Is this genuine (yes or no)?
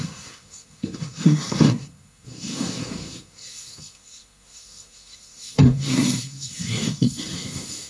no